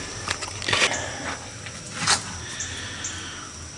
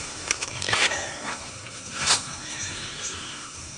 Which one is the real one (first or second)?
first